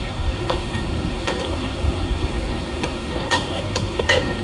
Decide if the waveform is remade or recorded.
remade